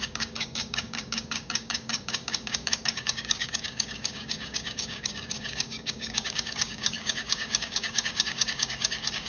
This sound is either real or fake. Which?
fake